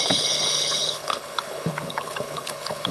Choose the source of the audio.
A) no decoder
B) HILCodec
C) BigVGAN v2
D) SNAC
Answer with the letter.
B